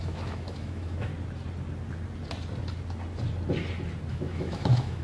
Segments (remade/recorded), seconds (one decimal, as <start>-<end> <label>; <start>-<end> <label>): 0.0-1.1 remade; 1.1-4.1 recorded; 4.1-5.0 remade

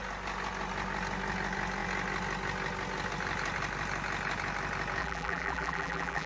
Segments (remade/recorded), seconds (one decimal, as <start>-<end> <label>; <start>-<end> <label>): 0.0-5.0 recorded; 5.0-6.3 remade

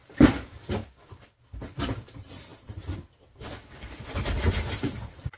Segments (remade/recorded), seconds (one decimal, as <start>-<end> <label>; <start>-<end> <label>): 0.0-0.8 remade; 0.8-1.4 recorded; 1.4-5.4 remade

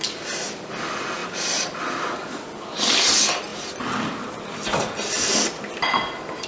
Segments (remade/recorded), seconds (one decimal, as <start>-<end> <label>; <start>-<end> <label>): 0.0-1.2 recorded; 1.2-1.8 remade; 1.8-2.2 recorded; 2.2-3.1 remade; 3.1-3.5 recorded; 3.5-5.6 remade; 5.6-6.5 recorded